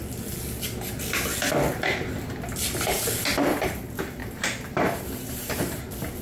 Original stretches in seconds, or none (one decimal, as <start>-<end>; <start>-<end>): 0.0-4.2; 5.8-6.2